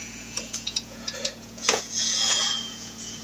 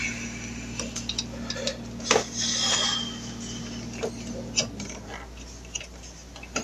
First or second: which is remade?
first